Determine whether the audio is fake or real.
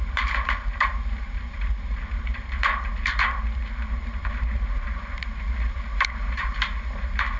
fake